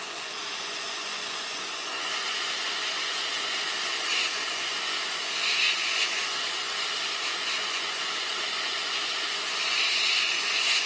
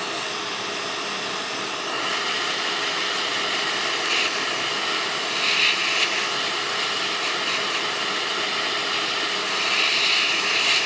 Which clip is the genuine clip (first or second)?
second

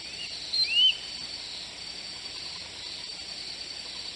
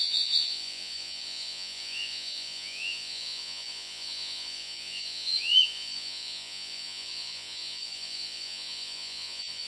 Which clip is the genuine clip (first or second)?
first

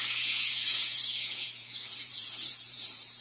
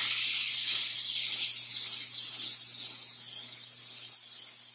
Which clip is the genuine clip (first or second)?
second